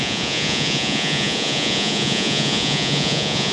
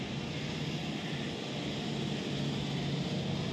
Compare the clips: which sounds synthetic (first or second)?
first